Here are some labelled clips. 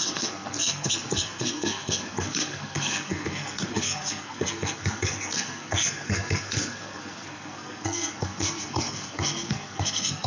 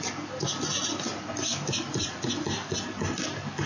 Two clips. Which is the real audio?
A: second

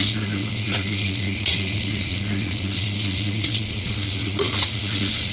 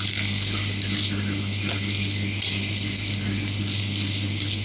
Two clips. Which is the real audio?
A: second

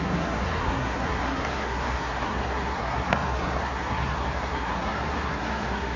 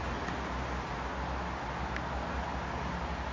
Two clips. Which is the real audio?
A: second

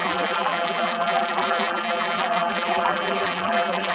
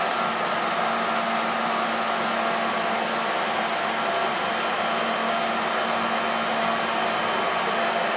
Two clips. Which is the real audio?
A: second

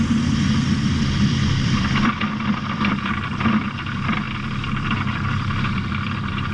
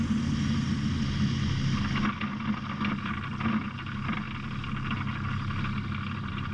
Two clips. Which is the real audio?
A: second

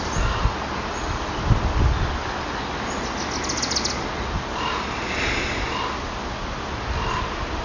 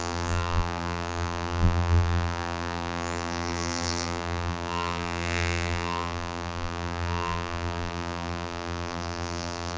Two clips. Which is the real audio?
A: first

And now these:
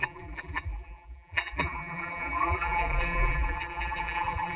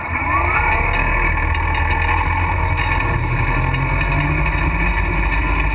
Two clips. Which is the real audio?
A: second